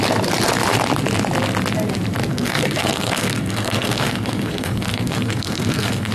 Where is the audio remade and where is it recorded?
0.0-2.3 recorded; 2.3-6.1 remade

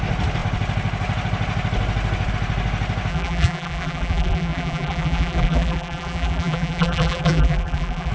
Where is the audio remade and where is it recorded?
0.0-3.1 recorded; 3.1-8.1 remade

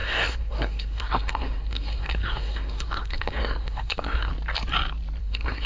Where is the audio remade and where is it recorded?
0.0-4.3 remade; 4.3-5.2 recorded; 5.2-5.7 remade

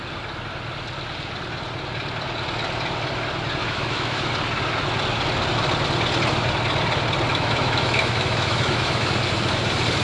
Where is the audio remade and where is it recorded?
0.0-3.6 recorded; 3.6-4.3 remade; 4.3-7.3 recorded; 7.3-9.1 remade; 9.1-10.0 recorded

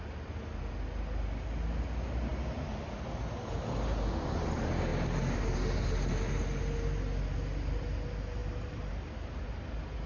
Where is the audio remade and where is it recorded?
0.0-10.1 recorded